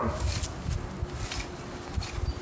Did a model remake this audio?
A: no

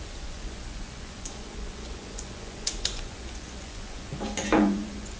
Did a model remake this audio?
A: yes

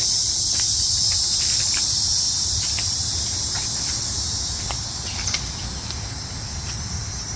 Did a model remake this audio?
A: yes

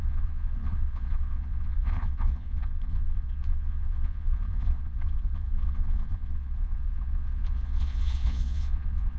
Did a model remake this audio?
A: yes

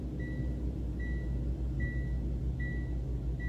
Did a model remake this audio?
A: no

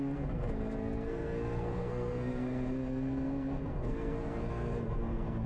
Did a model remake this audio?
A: yes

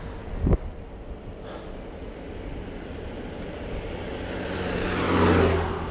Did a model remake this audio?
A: no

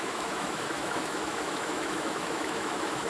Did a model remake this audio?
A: yes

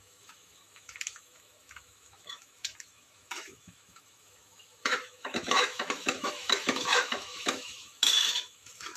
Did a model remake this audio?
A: yes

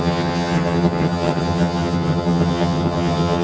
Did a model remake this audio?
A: yes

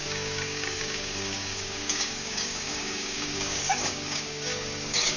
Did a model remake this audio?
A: yes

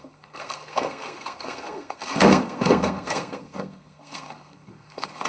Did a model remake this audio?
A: yes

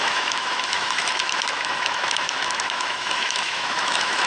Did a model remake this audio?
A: yes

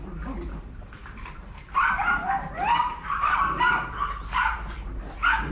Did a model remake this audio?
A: yes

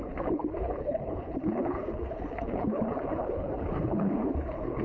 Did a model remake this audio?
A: yes